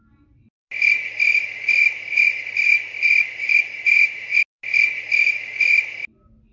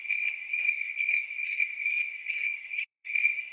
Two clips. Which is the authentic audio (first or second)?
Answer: first